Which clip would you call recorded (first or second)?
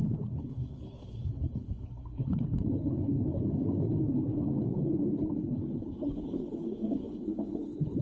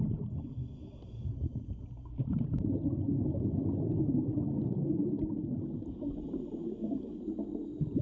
second